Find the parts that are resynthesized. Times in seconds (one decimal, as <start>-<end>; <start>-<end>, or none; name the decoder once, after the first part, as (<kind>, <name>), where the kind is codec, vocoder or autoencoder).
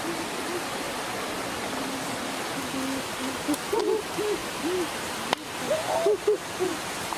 0.0-0.5 (vocoder, BigVGAN v2); 3.8-4.4; 6.5-7.2